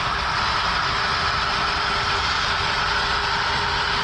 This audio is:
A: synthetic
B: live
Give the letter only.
B